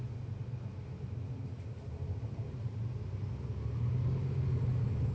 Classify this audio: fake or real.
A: real